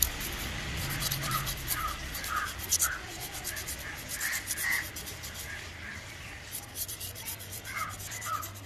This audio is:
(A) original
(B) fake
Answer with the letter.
A